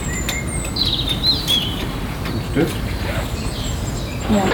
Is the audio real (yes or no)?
no